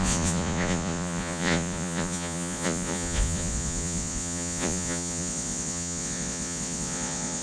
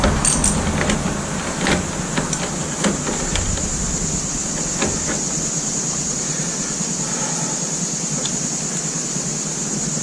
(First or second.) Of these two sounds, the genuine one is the second